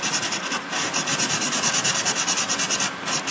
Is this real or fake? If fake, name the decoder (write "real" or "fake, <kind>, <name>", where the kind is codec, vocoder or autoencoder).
real